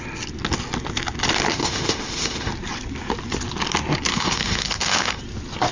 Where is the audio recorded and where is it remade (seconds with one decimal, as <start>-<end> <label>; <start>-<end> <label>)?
0.0-1.5 recorded; 1.5-2.5 remade; 2.5-4.1 recorded; 4.1-5.2 remade; 5.2-5.7 recorded